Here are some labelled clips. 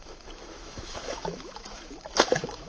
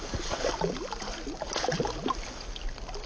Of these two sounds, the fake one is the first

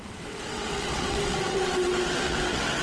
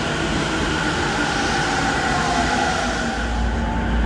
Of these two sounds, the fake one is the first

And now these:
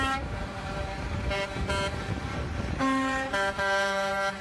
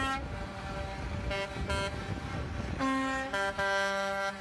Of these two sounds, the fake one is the first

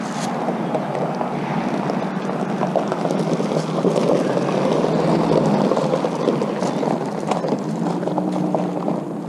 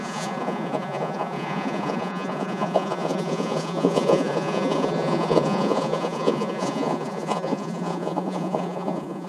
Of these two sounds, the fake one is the second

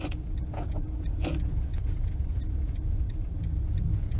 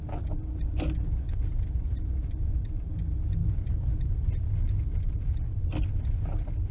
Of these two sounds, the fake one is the first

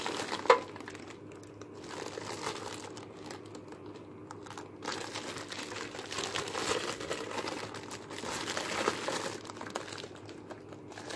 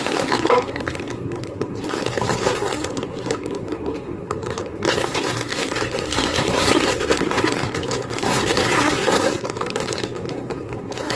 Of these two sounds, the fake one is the second